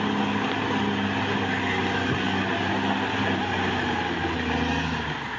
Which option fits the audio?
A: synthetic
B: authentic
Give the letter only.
B